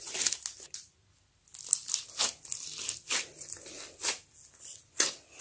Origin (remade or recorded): recorded